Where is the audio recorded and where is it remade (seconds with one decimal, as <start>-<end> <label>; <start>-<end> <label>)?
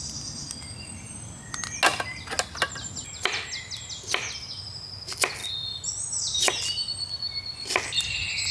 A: 0.0-8.5 recorded